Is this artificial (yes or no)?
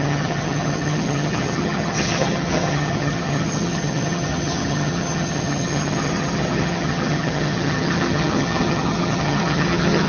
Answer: yes